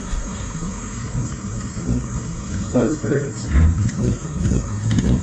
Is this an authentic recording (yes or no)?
no